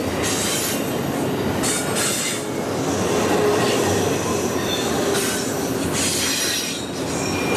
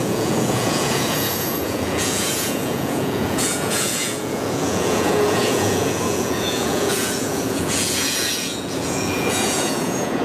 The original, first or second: first